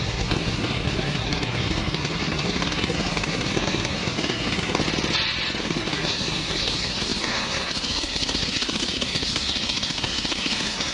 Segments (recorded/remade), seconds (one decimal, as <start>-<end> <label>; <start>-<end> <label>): 0.0-4.8 remade; 4.8-5.6 recorded; 5.6-10.9 remade

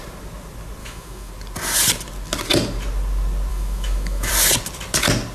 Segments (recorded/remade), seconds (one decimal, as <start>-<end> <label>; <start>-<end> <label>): 0.0-0.8 recorded; 0.8-1.3 remade; 1.3-3.5 recorded; 3.5-4.3 remade; 4.3-5.3 recorded

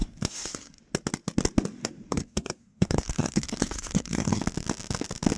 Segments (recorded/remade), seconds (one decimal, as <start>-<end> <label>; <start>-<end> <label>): 0.0-0.8 remade; 0.8-1.8 recorded; 1.8-4.4 remade; 4.4-5.4 recorded

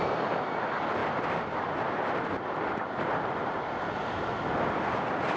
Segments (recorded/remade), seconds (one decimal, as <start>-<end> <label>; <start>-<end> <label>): 0.0-5.4 recorded

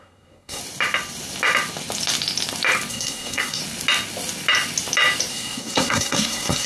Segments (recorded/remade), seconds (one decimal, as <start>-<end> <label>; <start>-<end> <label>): 0.0-0.6 remade; 0.6-2.9 recorded; 2.9-3.6 remade; 3.6-5.3 recorded; 5.3-6.7 remade

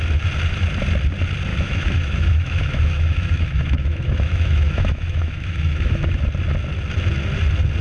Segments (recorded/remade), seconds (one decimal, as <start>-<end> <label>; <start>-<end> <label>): 0.0-1.5 recorded; 1.5-6.2 remade; 6.2-7.8 recorded

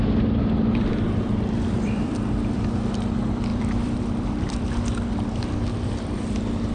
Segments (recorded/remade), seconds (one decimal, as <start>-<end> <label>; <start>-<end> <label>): 0.0-6.7 remade